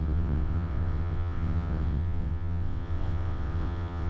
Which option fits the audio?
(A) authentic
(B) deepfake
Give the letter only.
B